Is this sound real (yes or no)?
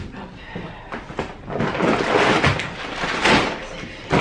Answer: yes